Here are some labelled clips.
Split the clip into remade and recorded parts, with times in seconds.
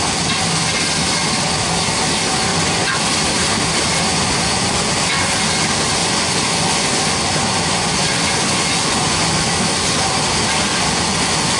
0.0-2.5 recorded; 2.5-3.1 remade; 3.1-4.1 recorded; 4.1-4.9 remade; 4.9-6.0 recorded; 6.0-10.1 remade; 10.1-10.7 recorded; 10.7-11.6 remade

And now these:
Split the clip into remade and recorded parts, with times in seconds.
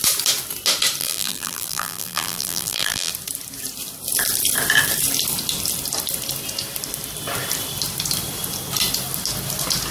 0.0-1.0 recorded; 1.0-3.1 remade; 3.1-9.9 recorded